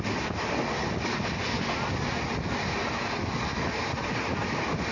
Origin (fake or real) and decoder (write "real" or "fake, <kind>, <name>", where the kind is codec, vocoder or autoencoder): real